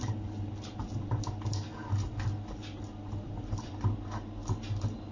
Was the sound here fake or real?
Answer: fake